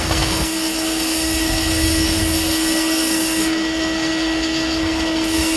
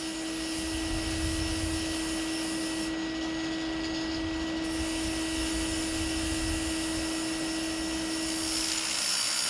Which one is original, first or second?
second